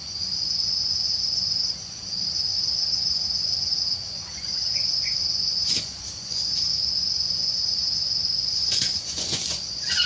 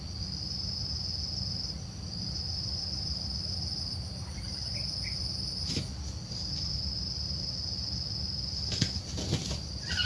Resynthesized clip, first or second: first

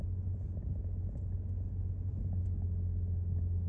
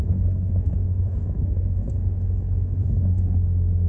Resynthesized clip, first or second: second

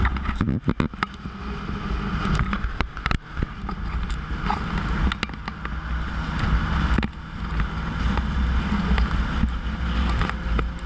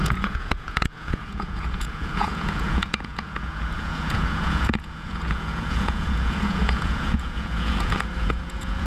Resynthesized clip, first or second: second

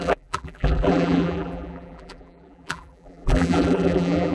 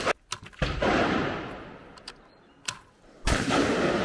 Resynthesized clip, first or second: first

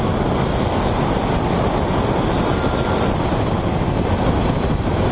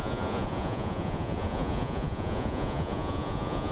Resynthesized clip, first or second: second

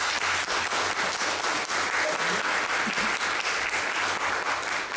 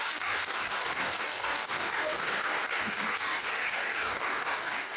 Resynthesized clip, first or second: second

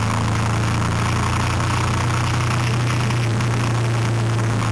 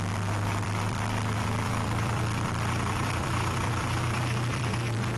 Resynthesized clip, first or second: second